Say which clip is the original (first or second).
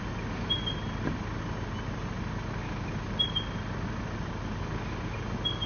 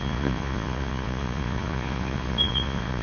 first